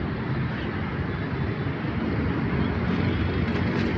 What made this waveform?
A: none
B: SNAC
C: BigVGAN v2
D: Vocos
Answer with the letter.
A